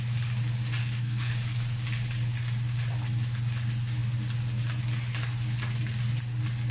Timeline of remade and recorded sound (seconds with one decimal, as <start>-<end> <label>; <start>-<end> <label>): 0.0-0.8 recorded; 0.8-1.3 remade; 1.3-6.7 recorded